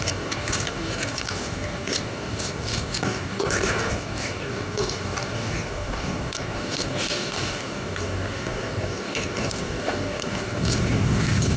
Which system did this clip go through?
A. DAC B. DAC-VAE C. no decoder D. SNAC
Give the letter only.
A